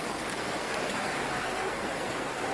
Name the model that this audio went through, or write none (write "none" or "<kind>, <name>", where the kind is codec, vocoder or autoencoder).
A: codec, SNAC